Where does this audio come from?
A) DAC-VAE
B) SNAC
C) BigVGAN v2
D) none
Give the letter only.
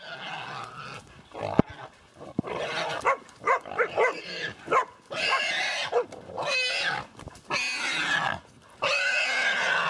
D